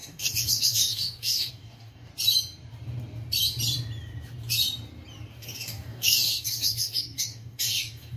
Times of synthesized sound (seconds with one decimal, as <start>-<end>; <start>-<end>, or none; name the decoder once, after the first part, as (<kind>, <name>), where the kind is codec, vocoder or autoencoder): 0.0-2.1 (codec, DAC); 5.3-8.2